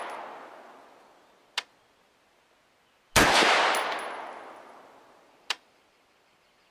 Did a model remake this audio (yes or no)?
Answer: no